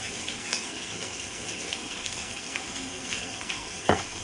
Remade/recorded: remade